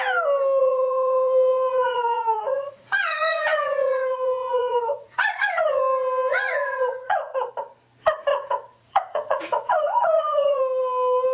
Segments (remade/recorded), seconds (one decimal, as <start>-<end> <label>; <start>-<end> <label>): 0.0-0.6 recorded; 0.6-5.8 remade; 5.8-6.3 recorded; 6.3-7.5 remade; 7.5-8.3 recorded; 8.3-10.6 remade; 10.6-11.3 recorded

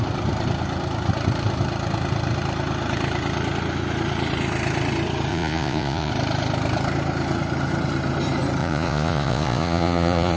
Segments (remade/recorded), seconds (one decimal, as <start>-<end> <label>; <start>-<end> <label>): 0.0-5.3 recorded; 5.3-6.1 remade; 6.1-8.6 recorded; 8.6-10.4 remade

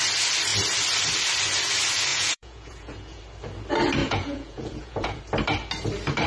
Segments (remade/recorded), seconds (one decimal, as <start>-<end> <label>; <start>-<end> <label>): 0.0-2.1 recorded; 2.1-3.2 remade; 3.2-4.0 recorded; 4.0-5.2 remade; 5.2-6.3 recorded